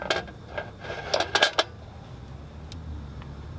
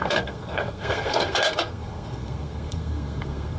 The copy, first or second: second